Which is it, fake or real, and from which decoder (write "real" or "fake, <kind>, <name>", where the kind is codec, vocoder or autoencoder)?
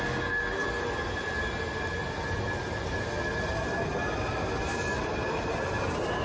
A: real